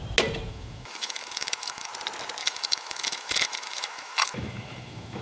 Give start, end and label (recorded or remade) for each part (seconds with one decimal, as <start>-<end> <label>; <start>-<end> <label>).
0.0-0.5 recorded; 0.5-1.9 remade; 1.9-2.4 recorded; 2.4-5.2 remade